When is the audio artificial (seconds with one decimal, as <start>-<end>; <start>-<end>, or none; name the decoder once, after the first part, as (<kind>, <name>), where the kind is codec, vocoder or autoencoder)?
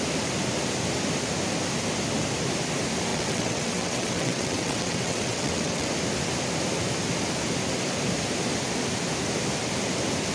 3.1-5.9 (vocoder, WaveNeXt)